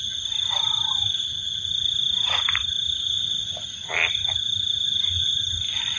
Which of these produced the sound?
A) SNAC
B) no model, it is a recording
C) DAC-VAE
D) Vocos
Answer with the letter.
B